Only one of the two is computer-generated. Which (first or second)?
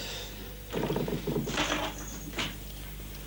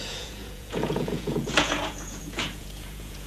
second